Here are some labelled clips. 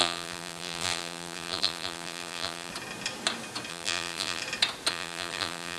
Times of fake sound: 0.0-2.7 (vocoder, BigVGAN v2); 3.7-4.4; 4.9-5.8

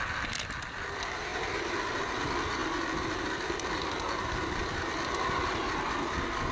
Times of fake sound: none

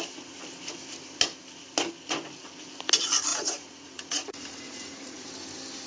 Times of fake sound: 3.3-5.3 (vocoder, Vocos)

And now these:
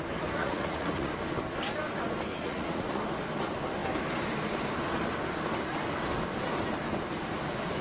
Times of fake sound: 0.4-1.1 (vocoder, Vocos); 2.3-3.0